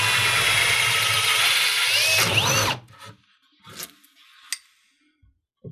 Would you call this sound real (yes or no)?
yes